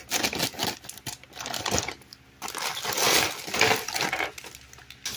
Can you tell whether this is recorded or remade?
recorded